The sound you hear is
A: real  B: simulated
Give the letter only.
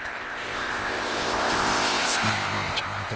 B